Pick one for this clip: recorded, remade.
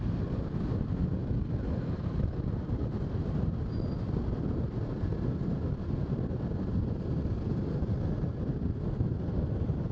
recorded